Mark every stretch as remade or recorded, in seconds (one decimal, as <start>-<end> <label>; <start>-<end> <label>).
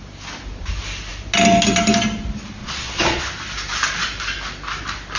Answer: 0.0-2.6 recorded; 2.6-3.2 remade; 3.2-5.2 recorded